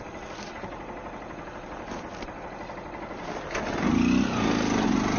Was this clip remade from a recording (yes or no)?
no